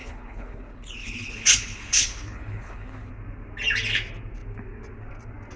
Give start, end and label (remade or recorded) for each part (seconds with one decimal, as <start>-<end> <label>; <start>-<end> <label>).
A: 0.0-3.1 remade; 3.1-5.6 recorded